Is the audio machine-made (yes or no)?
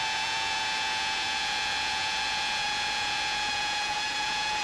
yes